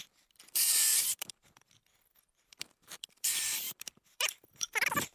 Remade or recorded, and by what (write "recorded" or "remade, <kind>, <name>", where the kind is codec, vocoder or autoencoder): remade, vocoder, BigVGAN v2